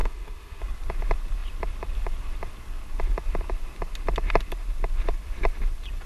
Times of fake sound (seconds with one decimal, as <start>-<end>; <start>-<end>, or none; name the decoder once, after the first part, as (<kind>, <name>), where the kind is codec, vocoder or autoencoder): 0.0-0.6 (autoencoder, DAC-VAE)